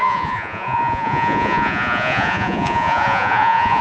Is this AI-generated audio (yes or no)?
yes